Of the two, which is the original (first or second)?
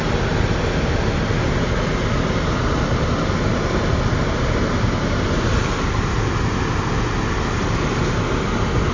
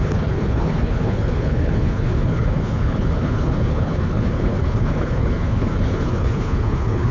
first